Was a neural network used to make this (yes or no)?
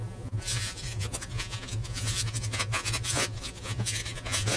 yes